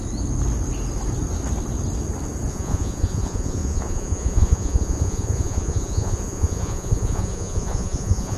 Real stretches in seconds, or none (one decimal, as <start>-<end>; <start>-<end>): 0.0-2.5